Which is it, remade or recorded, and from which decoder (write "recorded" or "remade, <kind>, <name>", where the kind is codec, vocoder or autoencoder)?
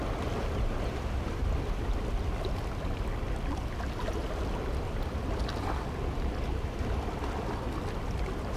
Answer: recorded